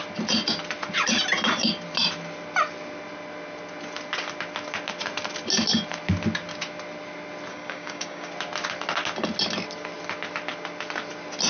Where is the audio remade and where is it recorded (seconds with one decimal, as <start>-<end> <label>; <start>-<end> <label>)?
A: 0.0-7.5 recorded; 7.5-8.3 remade; 8.3-11.5 recorded